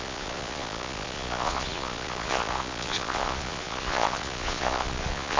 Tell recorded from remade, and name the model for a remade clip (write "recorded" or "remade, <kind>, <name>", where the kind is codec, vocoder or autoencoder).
remade, vocoder, Vocos